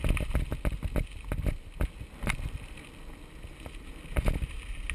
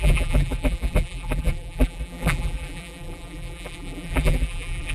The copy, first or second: second